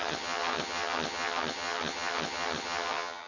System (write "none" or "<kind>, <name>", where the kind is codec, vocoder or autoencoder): vocoder, HiFi-GAN